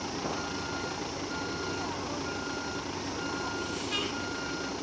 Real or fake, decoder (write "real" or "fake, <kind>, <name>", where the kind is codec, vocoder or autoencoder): real